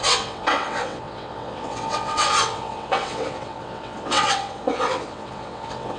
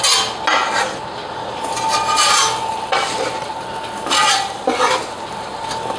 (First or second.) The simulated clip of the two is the first